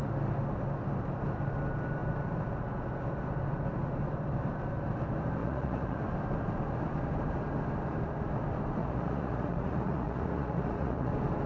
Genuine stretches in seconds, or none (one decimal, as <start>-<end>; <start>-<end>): 0.0-5.4; 6.0-8.8; 11.1-11.5